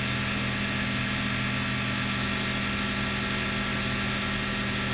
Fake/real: real